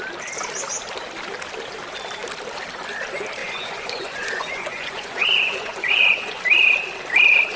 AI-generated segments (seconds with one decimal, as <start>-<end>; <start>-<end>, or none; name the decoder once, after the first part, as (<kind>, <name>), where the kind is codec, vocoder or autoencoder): 3.4-6.4 (vocoder, Vocos)